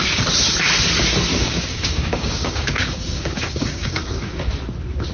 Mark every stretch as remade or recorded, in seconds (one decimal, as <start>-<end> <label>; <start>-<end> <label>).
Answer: 0.0-1.3 recorded; 1.3-4.4 remade; 4.4-5.1 recorded